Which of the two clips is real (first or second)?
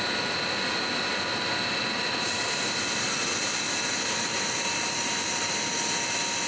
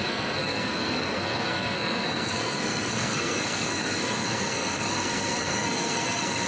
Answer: first